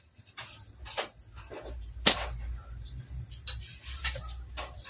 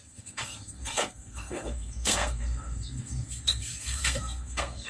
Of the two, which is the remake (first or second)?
second